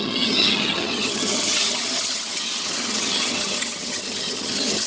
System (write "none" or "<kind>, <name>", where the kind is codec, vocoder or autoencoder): vocoder, HiFi-GAN